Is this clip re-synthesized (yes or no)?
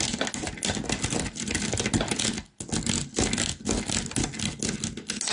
no